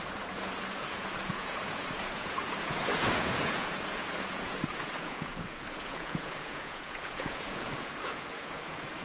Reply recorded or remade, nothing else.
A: remade